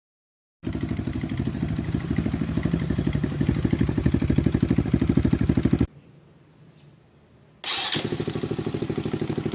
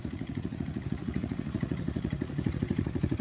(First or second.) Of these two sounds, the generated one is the second